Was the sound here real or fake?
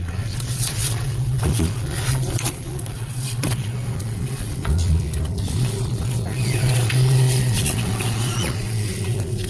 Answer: fake